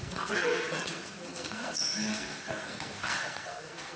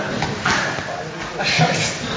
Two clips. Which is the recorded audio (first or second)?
second